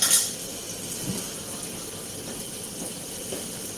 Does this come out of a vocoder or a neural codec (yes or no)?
no